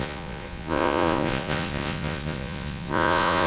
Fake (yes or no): yes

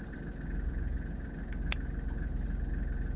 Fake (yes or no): no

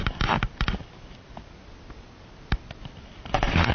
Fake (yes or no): no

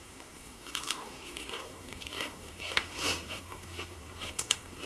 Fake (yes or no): yes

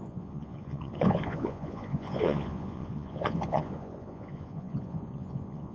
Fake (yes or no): yes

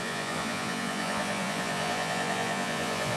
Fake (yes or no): yes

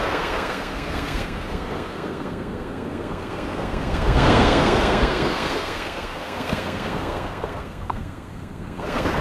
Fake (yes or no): yes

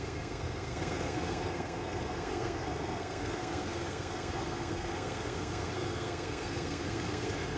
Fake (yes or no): yes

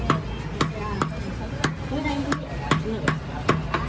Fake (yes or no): no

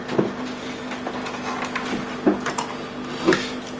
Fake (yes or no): no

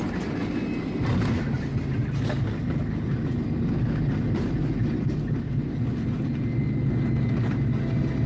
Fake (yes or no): no